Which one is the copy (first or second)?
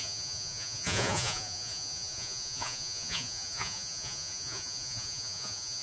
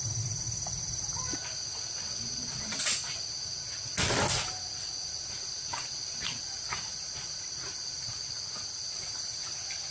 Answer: first